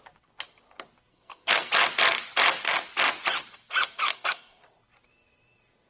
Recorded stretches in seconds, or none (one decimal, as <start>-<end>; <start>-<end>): 0.0-1.1; 1.7-4.1; 4.6-5.9